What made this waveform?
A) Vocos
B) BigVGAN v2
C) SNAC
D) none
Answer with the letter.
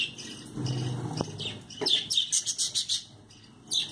D